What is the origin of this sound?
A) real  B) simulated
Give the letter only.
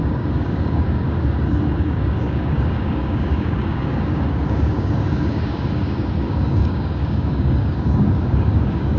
B